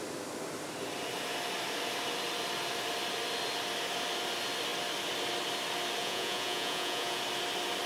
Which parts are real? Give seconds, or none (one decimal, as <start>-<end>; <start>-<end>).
0.0-6.0; 7.2-7.9